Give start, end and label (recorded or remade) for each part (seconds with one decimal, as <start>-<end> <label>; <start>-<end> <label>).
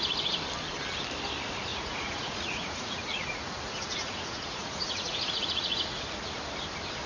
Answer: 0.0-1.7 recorded; 1.7-6.0 remade; 6.0-7.1 recorded